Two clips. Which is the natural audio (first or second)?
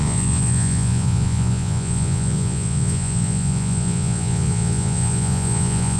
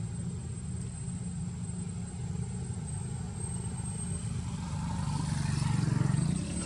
second